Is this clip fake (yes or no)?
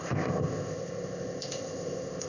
yes